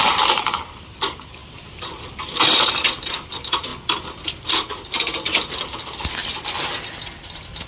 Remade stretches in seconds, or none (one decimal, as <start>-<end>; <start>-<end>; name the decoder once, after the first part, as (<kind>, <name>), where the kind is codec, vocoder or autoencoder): 0.0-3.7 (vocoder, BigVGAN v2); 4.5-6.2